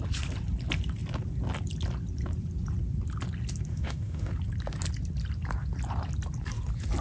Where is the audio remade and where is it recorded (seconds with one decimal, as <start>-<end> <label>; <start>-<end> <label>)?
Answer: 0.0-3.7 recorded; 3.7-4.3 remade; 4.3-7.0 recorded